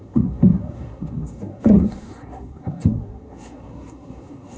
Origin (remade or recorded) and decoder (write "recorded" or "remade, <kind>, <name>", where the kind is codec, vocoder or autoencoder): remade, codec, SNAC